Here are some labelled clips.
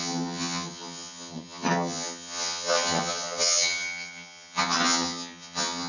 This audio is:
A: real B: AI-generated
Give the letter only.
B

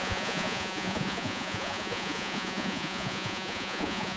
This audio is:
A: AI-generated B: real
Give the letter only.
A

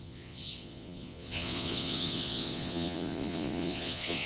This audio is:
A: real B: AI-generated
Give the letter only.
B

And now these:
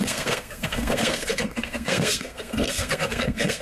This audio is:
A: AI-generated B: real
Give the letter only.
A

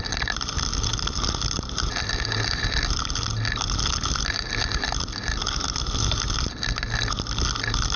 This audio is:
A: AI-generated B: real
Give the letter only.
B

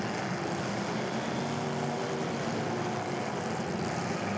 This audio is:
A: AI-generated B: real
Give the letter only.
B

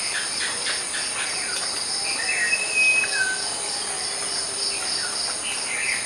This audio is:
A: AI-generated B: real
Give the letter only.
B